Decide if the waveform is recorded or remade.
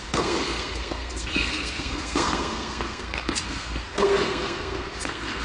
remade